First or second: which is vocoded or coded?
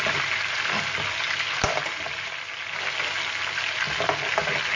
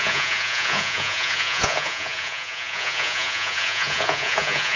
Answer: second